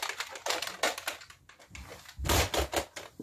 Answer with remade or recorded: recorded